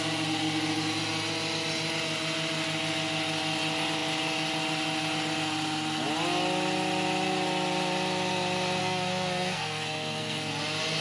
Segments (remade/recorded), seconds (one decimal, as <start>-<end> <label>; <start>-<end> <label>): 0.0-8.8 recorded; 8.8-10.5 remade; 10.5-11.0 recorded